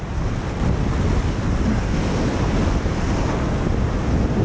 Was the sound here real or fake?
real